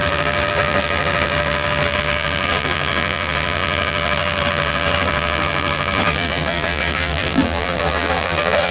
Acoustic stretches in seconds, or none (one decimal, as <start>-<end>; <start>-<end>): none